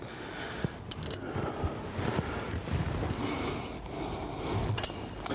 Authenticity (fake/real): real